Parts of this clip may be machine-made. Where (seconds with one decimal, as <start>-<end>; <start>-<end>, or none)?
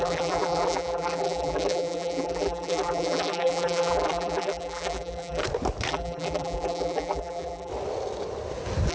0.0-5.4; 5.9-7.7